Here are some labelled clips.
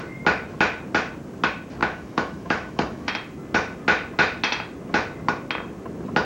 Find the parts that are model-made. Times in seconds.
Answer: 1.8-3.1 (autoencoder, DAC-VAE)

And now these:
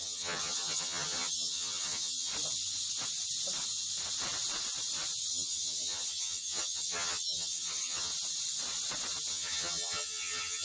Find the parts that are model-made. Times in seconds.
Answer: 0.0-2.3 (vocoder, HiFi-GAN); 5.3-8.1; 9.3-10.6